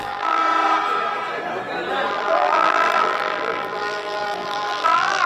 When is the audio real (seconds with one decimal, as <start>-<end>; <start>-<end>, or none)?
0.4-2.1

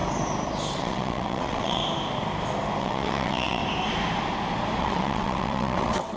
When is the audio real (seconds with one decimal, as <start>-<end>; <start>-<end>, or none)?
0.0-0.7; 1.8-2.8; 3.6-4.8

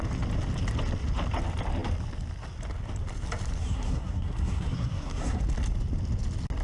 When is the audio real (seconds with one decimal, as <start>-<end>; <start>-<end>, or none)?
0.0-3.6; 5.4-6.6

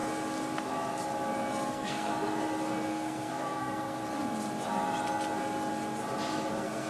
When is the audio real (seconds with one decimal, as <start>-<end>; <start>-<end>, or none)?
0.0-1.7; 2.1-2.9; 4.0-6.5

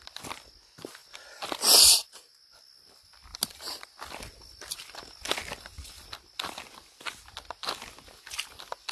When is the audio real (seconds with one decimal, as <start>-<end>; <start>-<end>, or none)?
0.0-8.9

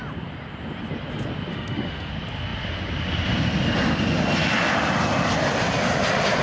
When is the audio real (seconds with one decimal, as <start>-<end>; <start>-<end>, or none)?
0.0-1.5; 2.1-6.4

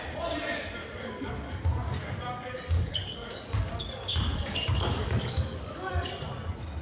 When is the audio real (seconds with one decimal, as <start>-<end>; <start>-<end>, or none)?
0.0-0.8; 1.6-2.0; 6.1-6.8